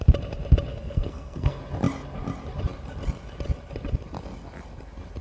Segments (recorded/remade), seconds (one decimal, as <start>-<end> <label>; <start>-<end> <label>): 0.0-0.7 recorded; 0.7-1.6 remade; 1.6-5.2 recorded

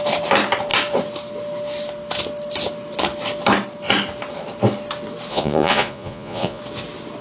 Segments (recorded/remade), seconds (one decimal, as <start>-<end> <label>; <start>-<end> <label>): 0.0-5.3 recorded; 5.3-6.6 remade; 6.6-7.2 recorded

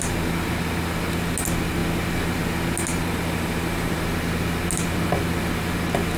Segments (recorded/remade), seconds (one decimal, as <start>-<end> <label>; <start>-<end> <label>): 0.0-2.9 recorded; 2.9-4.0 remade; 4.0-6.2 recorded

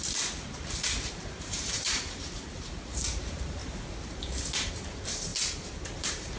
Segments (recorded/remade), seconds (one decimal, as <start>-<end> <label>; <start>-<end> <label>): 0.0-1.1 recorded; 1.1-3.6 remade; 3.6-4.7 recorded; 4.7-5.3 remade; 5.3-6.0 recorded; 6.0-6.4 remade

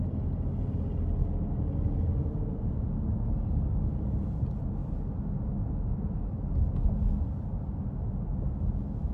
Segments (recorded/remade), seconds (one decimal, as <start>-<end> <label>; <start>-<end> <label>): 0.0-9.1 recorded